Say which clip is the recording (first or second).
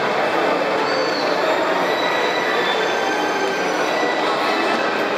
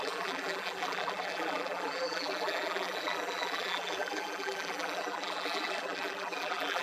first